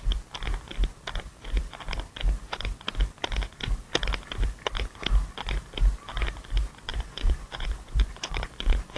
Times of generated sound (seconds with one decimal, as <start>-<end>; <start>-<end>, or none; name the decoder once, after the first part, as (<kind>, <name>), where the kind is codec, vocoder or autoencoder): 6.9-9.0 (vocoder, Vocos)